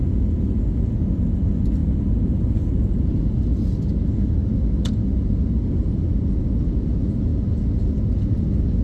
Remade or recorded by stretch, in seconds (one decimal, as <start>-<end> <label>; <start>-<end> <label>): 0.0-8.8 recorded